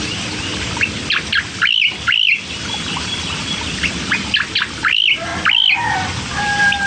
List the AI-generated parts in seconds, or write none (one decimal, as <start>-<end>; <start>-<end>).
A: 0.0-5.3; 6.4-6.9